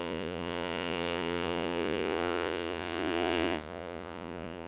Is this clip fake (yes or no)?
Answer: yes